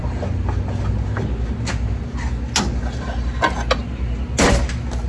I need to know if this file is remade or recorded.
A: recorded